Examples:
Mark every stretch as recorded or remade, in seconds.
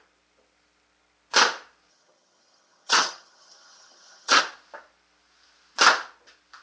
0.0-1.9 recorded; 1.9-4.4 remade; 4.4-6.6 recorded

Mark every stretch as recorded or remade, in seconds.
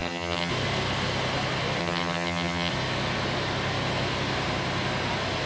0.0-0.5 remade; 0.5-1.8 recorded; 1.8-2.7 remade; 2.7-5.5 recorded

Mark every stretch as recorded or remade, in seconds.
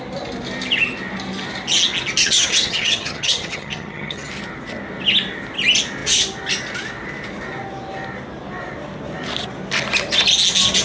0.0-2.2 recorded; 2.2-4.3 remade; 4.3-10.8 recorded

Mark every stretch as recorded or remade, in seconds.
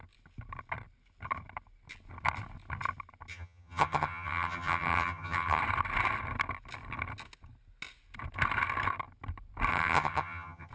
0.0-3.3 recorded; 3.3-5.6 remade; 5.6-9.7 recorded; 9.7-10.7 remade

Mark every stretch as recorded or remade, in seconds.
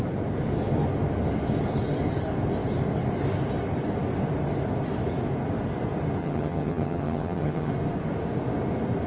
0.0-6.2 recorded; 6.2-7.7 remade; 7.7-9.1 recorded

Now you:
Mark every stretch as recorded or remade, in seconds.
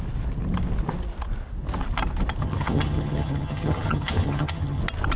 0.0-2.4 recorded; 2.4-4.8 remade; 4.8-5.2 recorded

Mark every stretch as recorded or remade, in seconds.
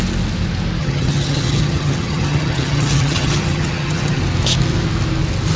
0.0-0.8 recorded; 0.8-4.2 remade; 4.2-5.6 recorded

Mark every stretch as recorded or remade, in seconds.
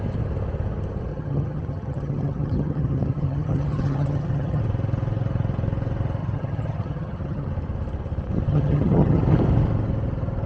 0.0-1.1 recorded; 1.1-4.6 remade; 4.6-6.2 recorded; 6.2-7.5 remade; 7.5-8.5 recorded; 8.5-9.2 remade; 9.2-10.5 recorded